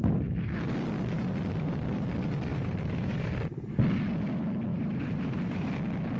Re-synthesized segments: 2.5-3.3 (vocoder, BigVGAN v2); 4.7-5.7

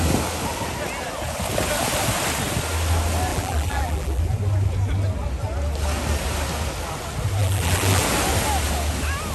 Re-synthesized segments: 3.3-4.2 (vocoder, BigVGAN v2); 7.4-8.0

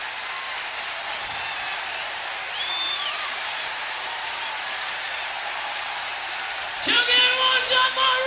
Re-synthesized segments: 2.7-7.2 (vocoder, BigVGAN v2)

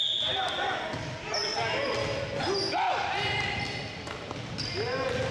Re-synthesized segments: none

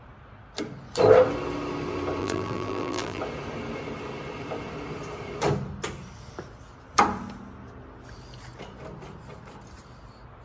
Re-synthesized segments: 2.2-3.2 (vocoder, BigVGAN v2)

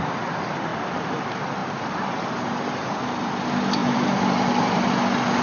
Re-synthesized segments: 0.7-1.2 (vocoder, BigVGAN v2); 1.6-2.1; 3.8-4.9